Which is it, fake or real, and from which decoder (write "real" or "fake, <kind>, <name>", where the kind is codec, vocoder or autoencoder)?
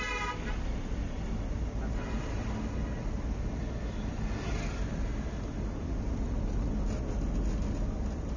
real